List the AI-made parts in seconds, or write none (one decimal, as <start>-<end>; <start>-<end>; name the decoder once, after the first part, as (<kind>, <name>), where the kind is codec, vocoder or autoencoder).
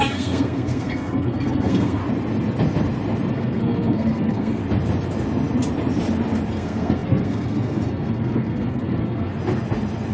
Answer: 0.0-2.0 (codec, SNAC); 3.3-4.6; 6.5-9.3